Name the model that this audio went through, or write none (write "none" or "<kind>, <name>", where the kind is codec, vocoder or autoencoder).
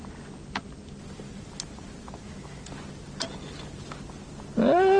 none